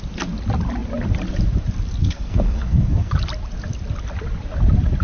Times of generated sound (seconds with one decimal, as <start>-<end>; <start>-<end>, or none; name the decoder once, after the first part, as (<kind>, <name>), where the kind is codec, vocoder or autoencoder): 2.0-3.1 (codec, SNAC)